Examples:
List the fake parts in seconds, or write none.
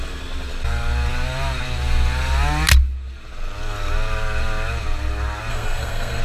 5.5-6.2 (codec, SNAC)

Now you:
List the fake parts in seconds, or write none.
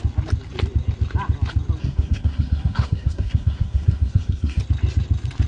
1.8-4.6 (codec, SNAC)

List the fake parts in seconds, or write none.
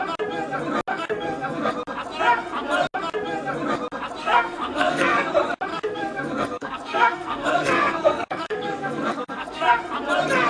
0.9-1.7 (codec, SNAC); 4.2-5.3; 5.7-9.8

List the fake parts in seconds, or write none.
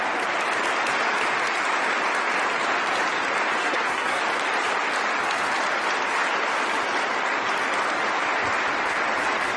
3.6-4.2 (codec, SNAC)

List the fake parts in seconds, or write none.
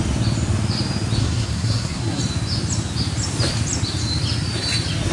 1.2-2.2 (codec, SNAC)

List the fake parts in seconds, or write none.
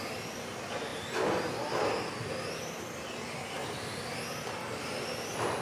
none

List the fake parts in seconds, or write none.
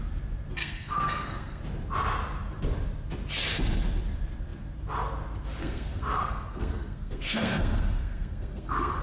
0.6-1.6 (codec, SNAC); 5.6-9.0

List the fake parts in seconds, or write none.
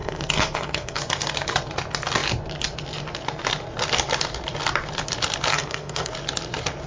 0.0-1.0 (codec, SNAC); 5.5-6.1